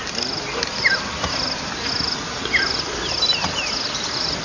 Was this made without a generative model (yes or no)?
yes